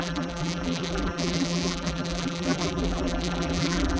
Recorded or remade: remade